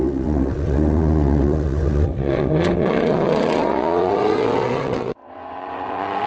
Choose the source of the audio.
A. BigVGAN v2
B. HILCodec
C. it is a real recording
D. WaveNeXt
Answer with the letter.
D